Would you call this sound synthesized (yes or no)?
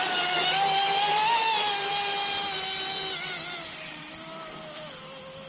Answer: no